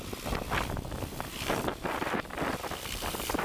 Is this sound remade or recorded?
remade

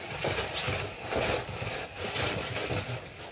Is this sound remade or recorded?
recorded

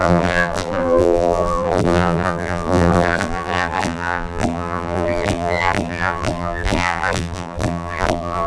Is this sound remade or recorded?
remade